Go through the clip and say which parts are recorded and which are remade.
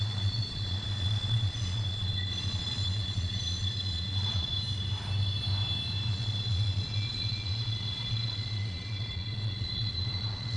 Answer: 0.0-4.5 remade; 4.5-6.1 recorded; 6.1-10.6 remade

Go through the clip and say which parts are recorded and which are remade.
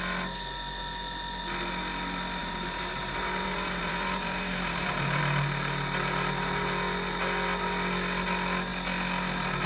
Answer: 0.0-2.4 recorded; 2.4-5.2 remade; 5.2-9.7 recorded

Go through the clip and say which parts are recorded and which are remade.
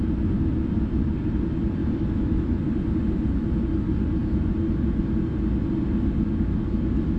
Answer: 0.0-1.8 recorded; 1.8-2.6 remade; 2.6-7.2 recorded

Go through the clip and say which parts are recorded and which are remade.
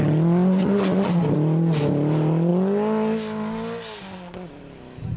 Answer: 0.0-0.6 recorded; 0.6-1.2 remade; 1.2-5.2 recorded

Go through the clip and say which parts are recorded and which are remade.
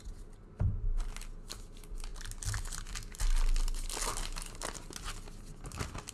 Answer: 0.0-6.1 recorded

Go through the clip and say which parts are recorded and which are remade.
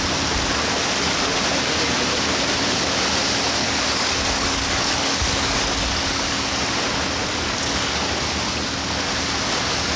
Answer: 0.0-3.6 recorded; 3.6-6.6 remade; 6.6-7.2 recorded; 7.2-8.2 remade; 8.2-10.0 recorded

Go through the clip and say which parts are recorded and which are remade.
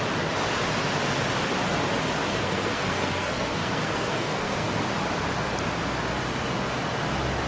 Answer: 0.0-2.3 recorded; 2.3-4.8 remade; 4.8-7.5 recorded